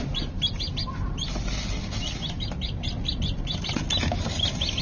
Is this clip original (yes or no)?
yes